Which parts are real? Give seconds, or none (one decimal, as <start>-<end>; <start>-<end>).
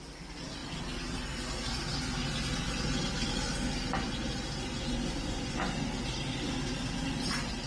0.0-4.7; 5.7-7.7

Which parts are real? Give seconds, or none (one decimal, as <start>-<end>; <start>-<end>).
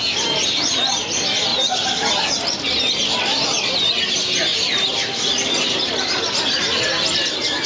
0.0-7.7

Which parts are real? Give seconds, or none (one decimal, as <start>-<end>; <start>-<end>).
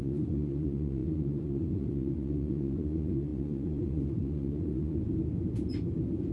5.0-6.3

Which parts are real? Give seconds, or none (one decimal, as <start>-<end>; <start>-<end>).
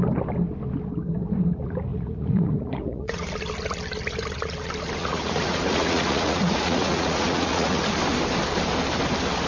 0.0-1.9; 3.3-5.0; 7.8-9.5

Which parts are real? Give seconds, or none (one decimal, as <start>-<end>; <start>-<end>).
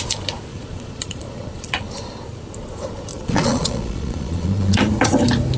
0.0-0.5; 1.9-3.1; 4.8-5.6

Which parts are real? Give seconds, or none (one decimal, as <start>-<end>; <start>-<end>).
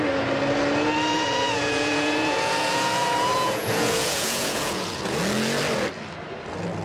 0.0-1.1; 5.2-6.8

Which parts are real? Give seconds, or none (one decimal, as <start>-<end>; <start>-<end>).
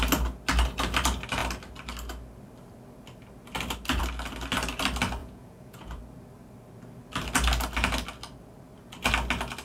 0.0-5.2; 6.0-9.6